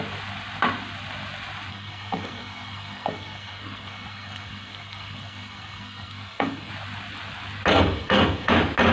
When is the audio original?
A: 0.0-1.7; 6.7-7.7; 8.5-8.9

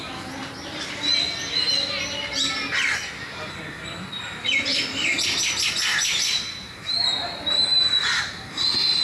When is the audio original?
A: 0.0-0.4; 0.9-5.9; 8.2-9.0

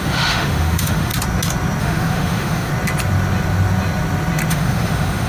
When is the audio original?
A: 1.1-1.8; 2.7-4.5

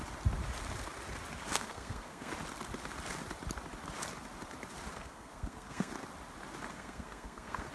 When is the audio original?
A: 0.0-1.5; 2.3-4.9; 5.9-6.7

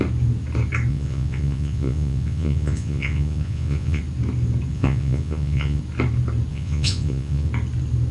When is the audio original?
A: 0.0-0.9; 4.0-4.7; 5.8-6.5; 7.5-8.1

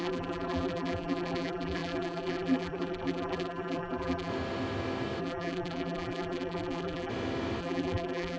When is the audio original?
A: 4.3-5.2; 7.1-7.6

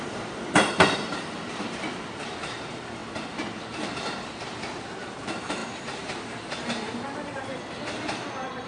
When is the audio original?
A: 3.0-4.8